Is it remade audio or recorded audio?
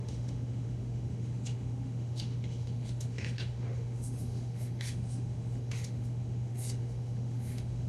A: remade